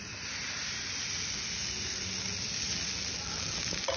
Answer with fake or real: real